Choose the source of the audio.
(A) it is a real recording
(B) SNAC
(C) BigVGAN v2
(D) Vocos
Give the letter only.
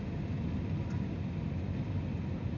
A